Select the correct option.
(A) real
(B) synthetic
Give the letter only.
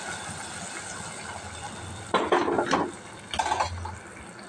A